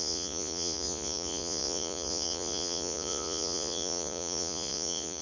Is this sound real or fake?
fake